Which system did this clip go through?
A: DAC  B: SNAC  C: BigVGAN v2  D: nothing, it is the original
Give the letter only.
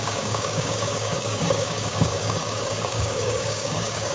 A